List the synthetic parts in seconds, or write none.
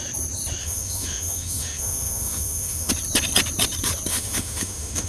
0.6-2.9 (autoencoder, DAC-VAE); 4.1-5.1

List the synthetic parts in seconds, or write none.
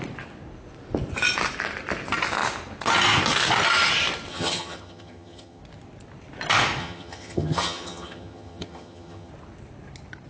4.3-5.6 (vocoder, HiFi-GAN); 6.8-9.3